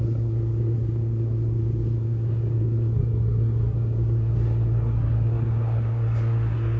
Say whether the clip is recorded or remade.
remade